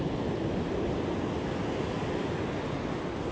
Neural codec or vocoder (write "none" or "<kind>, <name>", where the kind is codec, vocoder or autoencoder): none